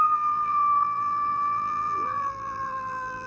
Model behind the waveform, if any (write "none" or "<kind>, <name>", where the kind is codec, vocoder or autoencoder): vocoder, BigVGAN v2